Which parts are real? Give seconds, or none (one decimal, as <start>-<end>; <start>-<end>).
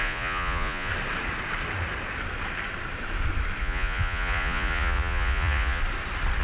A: 0.9-3.6; 5.8-6.4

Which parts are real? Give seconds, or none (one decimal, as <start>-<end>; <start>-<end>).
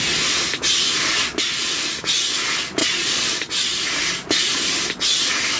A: 0.0-2.8; 3.5-5.6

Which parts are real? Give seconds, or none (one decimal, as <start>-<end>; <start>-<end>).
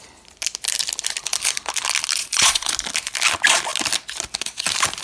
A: 0.0-2.2; 2.7-5.0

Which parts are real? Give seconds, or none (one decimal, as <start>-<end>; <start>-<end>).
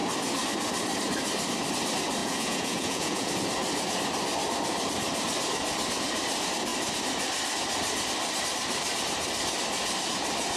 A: 0.0-2.2; 3.3-10.6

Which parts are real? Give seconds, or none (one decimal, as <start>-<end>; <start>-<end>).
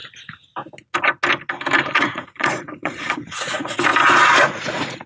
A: 0.0-1.9; 3.9-4.4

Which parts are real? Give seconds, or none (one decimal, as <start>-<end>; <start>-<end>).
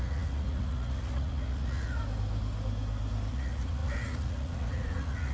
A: 2.0-3.3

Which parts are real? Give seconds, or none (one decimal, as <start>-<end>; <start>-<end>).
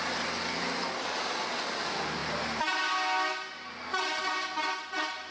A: 0.0-5.3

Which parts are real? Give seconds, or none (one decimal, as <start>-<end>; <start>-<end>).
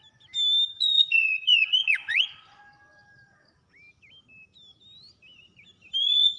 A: 0.0-0.8; 2.6-6.0